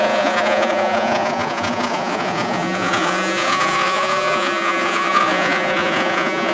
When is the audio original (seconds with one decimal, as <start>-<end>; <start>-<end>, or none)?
none